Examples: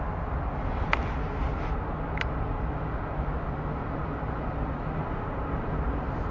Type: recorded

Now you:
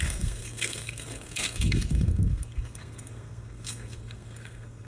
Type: remade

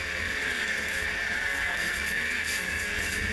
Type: remade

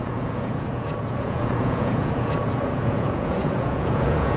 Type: remade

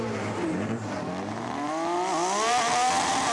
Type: recorded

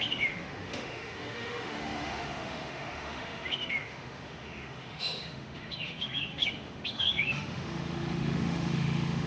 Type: remade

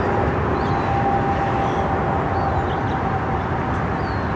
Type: recorded